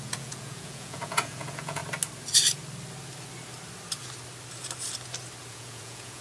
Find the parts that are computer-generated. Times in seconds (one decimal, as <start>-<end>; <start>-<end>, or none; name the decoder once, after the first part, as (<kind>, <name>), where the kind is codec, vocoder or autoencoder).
0.0-1.8 (vocoder, Vocos); 5.5-6.2